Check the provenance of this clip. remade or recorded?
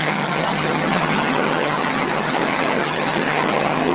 remade